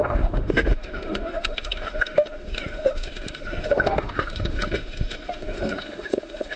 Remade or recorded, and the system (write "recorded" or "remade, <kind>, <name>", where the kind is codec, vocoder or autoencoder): remade, autoencoder, DAC-VAE